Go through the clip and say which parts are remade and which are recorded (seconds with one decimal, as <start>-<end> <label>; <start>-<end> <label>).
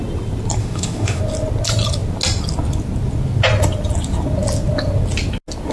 0.0-0.6 recorded; 0.6-1.2 remade; 1.2-5.7 recorded